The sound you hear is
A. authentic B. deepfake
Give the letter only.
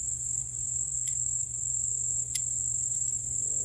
B